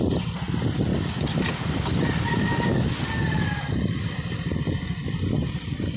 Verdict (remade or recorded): recorded